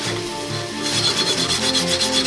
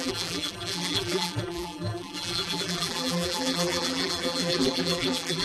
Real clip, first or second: first